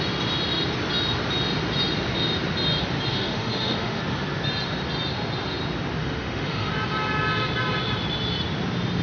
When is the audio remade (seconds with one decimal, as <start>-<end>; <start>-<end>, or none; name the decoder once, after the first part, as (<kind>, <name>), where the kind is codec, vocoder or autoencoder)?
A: 3.1-4.0 (autoencoder, DAC-VAE); 6.0-6.7